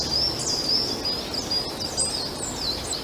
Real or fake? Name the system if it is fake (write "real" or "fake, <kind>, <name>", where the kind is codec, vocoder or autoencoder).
real